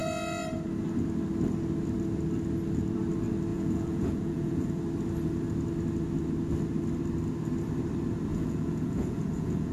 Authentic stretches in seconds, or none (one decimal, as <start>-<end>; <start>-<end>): 0.0-3.5; 4.8-8.3

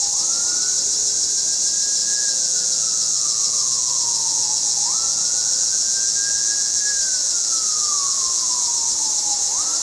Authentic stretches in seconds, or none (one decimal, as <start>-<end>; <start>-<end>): 0.0-2.0; 6.8-7.2; 8.7-9.8

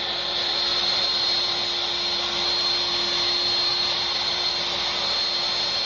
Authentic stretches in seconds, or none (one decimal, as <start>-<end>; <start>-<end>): 0.0-0.7; 1.6-3.7; 4.5-5.9

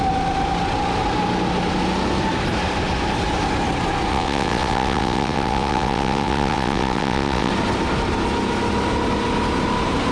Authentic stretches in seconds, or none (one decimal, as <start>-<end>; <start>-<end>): 0.0-4.1; 7.5-10.1

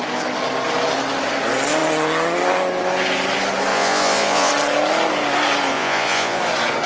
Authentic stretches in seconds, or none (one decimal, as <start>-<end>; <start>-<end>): 0.0-3.7; 4.5-5.7; 6.4-6.9